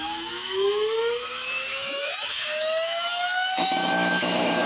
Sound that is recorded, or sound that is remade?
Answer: remade